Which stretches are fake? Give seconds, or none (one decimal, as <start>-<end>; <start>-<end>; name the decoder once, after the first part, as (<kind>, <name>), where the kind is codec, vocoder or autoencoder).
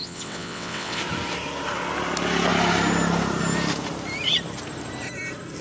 0.0-1.0 (vocoder, WaveNeXt)